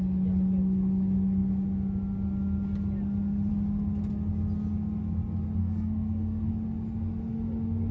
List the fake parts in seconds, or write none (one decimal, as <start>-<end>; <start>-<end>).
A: 5.6-6.5